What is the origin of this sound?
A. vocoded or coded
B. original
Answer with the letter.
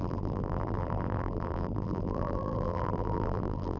A